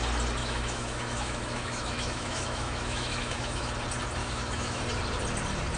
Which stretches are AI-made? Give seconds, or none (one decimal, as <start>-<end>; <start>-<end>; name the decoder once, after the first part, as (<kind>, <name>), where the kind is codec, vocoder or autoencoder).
0.4-3.7 (autoencoder, DAC-VAE); 4.2-4.8